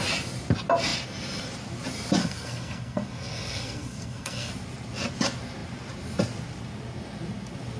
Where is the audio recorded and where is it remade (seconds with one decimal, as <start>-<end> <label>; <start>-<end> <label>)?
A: 0.0-2.2 recorded; 2.2-4.5 remade; 4.5-7.8 recorded